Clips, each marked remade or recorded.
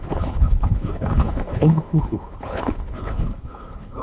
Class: remade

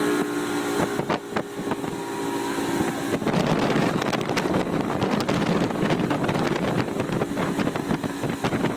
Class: recorded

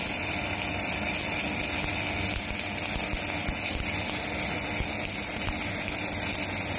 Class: recorded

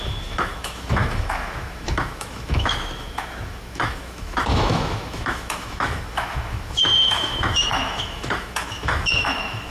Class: remade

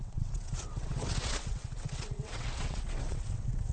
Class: remade